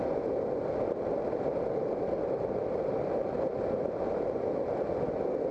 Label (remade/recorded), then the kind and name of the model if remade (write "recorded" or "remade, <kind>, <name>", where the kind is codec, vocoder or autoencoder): recorded